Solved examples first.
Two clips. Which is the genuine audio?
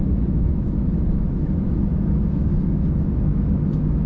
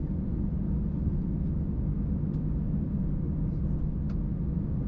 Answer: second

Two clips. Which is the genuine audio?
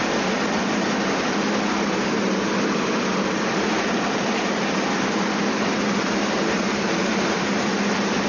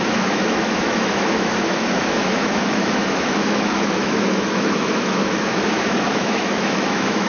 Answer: first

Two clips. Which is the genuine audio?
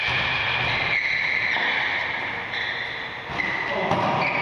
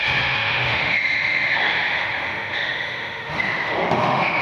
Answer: first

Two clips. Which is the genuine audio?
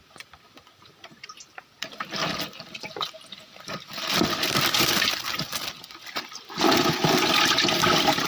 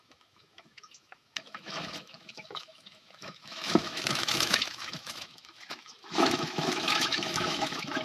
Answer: first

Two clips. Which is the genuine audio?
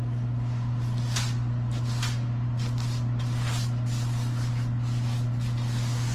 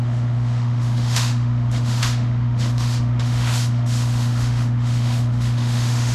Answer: first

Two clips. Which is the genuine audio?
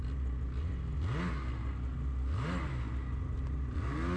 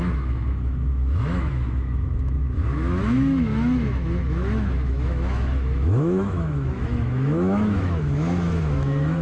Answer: first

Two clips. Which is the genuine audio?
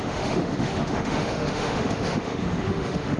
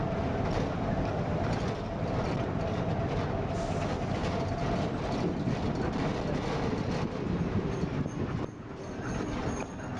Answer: second